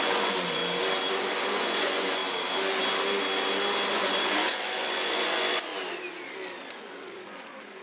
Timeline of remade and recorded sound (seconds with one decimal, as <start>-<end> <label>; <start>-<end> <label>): 0.0-0.6 remade; 0.6-1.1 recorded; 1.1-2.2 remade; 2.2-3.9 recorded; 3.9-5.7 remade; 5.7-6.8 recorded; 6.8-7.8 remade